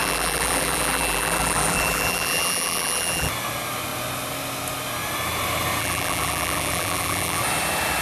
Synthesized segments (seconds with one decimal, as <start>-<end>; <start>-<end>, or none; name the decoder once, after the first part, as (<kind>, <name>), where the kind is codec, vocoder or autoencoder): 0.0-3.3 (vocoder, BigVGAN v2); 5.8-7.4